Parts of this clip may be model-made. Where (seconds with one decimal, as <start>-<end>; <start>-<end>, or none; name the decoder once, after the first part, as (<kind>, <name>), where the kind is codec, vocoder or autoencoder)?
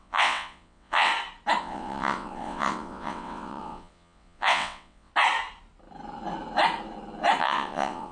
0.0-1.1 (vocoder, WaveNeXt); 1.6-5.1; 7.4-8.1